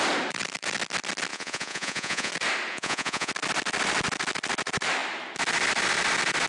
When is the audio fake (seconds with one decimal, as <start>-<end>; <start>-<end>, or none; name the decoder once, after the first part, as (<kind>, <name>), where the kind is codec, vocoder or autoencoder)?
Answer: 1.3-2.3 (vocoder, Vocos); 2.7-3.3